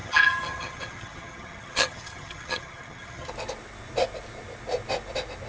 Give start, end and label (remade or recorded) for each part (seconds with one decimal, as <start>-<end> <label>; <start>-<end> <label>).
0.0-3.3 remade; 3.3-5.5 recorded